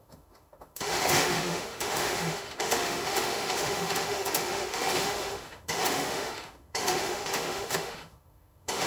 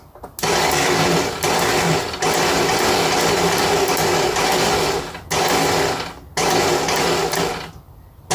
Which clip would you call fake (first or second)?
first